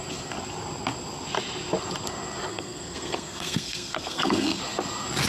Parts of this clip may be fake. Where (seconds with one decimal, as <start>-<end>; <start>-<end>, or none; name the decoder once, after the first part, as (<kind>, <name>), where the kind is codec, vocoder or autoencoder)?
2.5-4.6 (codec, SNAC)